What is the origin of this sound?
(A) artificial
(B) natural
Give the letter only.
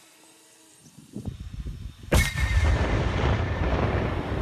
A